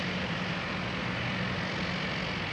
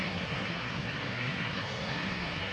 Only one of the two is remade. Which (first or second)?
second